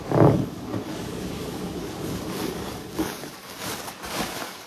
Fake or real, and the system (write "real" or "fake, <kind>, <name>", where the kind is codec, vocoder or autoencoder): fake, codec, DAC